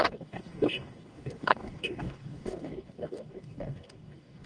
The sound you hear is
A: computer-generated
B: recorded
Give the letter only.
A